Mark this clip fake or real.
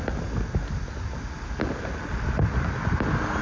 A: real